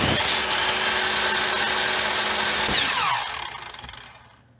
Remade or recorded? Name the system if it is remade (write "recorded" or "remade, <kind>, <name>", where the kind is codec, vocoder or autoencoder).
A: recorded